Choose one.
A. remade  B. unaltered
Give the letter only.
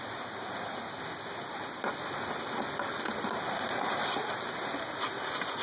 B